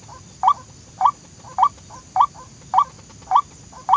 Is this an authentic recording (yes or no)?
yes